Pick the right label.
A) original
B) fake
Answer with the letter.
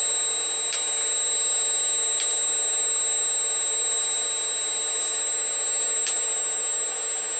A